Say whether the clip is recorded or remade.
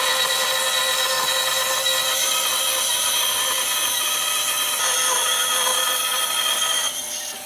recorded